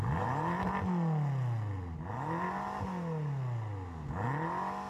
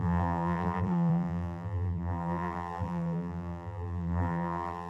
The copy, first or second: second